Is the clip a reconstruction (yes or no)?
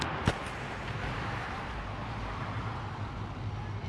no